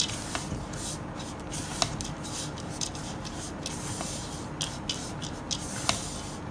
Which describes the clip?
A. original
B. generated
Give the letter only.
A